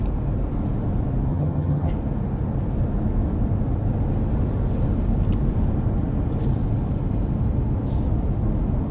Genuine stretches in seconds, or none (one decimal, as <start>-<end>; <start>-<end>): 0.0-1.3; 1.9-8.9

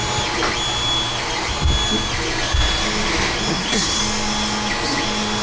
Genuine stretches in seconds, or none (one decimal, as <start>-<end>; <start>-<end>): 0.0-3.5; 4.0-5.4

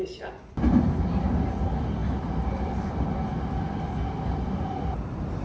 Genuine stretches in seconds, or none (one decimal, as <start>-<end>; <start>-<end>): 0.0-5.4

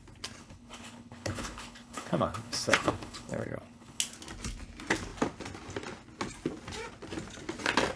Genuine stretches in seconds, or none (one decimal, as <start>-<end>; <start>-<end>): 0.0-0.4; 4.0-8.0